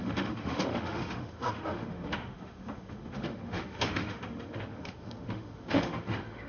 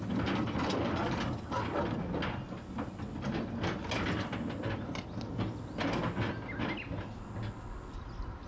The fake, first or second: first